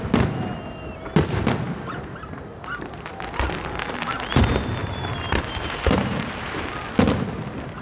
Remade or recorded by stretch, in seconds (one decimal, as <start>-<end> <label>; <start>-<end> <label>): 0.0-4.8 recorded; 4.8-6.6 remade; 6.6-7.8 recorded